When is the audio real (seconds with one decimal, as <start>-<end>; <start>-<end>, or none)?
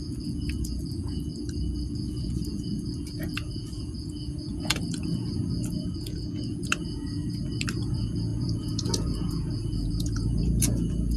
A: 1.3-1.9; 7.2-7.9